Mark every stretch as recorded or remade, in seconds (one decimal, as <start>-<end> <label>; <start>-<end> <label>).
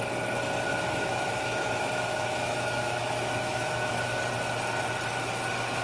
0.0-0.7 recorded; 0.7-4.2 remade; 4.2-5.8 recorded